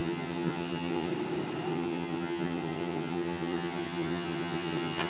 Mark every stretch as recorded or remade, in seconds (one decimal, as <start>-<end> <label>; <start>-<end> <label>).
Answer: 0.0-1.1 remade; 1.1-1.7 recorded; 1.7-5.1 remade